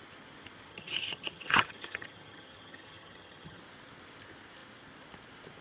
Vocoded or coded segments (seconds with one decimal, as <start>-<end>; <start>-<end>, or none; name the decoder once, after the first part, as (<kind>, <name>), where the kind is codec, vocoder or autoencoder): 0.7-3.6 (vocoder, HiFi-GAN)